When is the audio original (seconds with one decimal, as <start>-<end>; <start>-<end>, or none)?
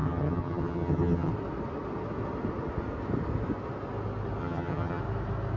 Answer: 1.3-4.4; 5.0-5.6